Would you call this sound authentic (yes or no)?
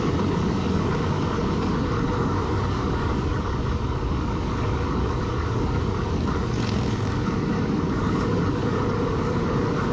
no